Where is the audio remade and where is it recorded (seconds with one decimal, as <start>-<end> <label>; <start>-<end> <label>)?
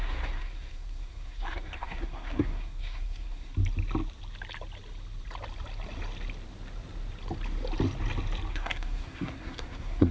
0.0-3.5 remade; 3.5-8.5 recorded; 8.5-10.1 remade